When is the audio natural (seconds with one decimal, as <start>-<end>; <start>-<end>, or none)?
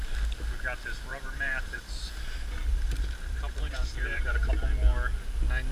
0.0-1.1; 1.9-2.7; 4.5-5.7